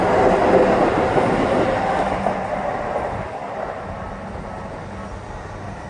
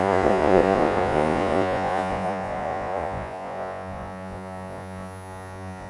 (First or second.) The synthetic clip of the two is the second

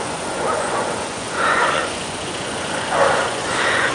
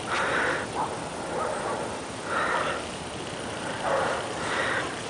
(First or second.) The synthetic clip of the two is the first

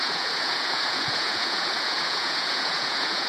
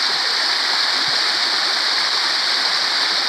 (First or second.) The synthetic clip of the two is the first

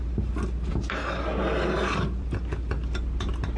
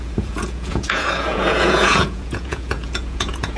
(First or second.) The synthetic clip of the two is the second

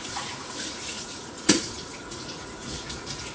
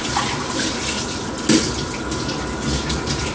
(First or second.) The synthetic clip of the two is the first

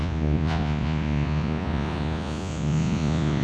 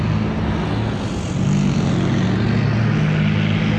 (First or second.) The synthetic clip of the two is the first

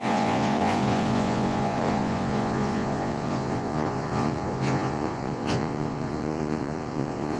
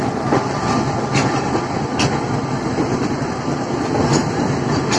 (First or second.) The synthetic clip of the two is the first